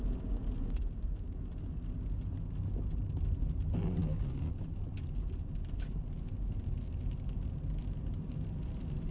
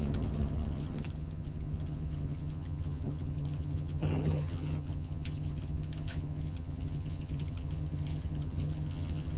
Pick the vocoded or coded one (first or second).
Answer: second